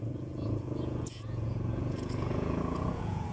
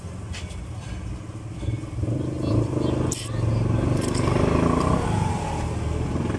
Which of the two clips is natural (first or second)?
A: second